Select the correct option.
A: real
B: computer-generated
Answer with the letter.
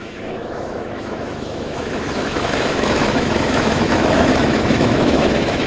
B